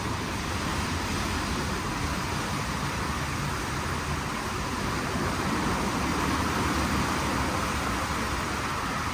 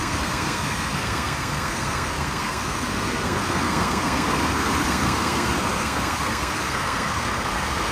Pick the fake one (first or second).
second